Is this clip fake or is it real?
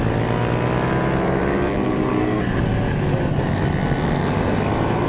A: real